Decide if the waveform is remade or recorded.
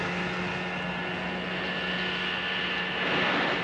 recorded